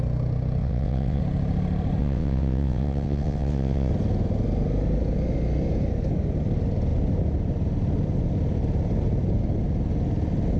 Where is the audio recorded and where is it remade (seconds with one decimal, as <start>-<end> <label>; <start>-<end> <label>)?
0.0-0.6 recorded; 0.6-1.2 remade; 1.2-2.0 recorded; 2.0-3.9 remade; 3.9-10.6 recorded